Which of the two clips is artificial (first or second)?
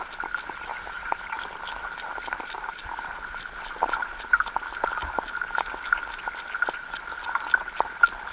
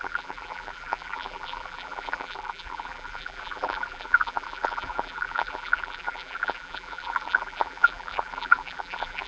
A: second